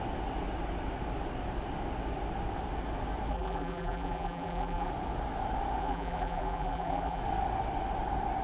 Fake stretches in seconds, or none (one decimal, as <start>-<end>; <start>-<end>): 3.3-4.9; 5.8-7.2